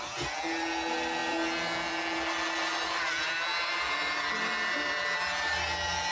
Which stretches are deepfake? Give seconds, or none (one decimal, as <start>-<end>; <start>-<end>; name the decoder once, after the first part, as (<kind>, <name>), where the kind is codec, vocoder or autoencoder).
0.0-6.1 (vocoder, BigVGAN v2)